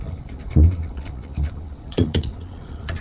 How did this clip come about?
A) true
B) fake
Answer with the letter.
B